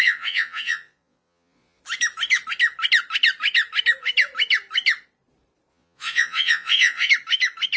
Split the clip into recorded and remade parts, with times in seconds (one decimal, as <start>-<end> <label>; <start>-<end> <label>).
0.0-1.8 remade; 1.8-5.7 recorded; 5.7-7.1 remade; 7.1-7.8 recorded